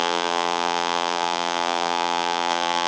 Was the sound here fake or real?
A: fake